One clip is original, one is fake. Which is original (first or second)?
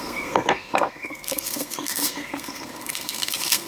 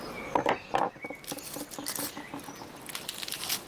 second